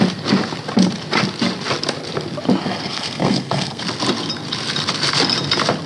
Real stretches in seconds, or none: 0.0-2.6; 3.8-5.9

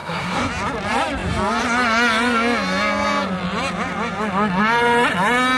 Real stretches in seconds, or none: 0.5-5.6

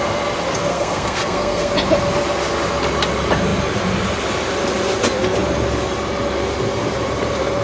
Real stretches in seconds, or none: 0.0-0.7; 1.7-7.6

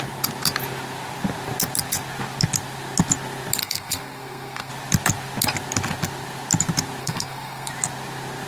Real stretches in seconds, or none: 0.0-3.6; 4.7-7.0; 7.7-8.5

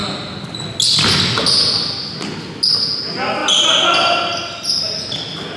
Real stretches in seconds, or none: 0.0-5.6